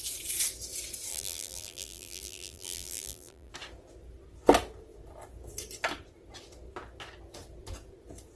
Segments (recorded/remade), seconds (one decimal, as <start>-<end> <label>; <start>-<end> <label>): 0.0-1.1 recorded; 1.1-3.5 remade; 3.5-8.4 recorded